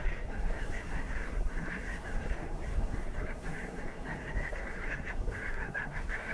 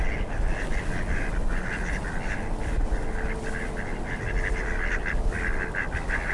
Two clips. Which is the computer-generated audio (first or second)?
first